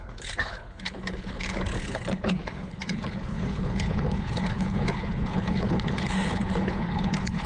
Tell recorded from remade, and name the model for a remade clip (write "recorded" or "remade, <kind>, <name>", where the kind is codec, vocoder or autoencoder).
remade, codec, HILCodec